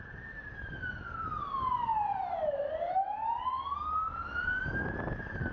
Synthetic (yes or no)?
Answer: no